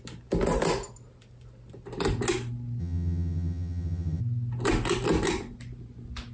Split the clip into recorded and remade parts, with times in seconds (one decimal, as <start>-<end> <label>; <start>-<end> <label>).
0.0-2.8 recorded; 2.8-4.2 remade; 4.2-6.3 recorded